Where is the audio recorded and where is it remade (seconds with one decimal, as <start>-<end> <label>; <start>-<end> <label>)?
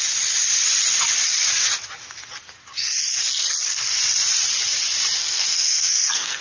0.0-5.2 recorded; 5.2-6.4 remade